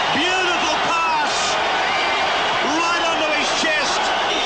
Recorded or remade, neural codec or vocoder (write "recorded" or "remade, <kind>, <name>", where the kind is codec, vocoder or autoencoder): recorded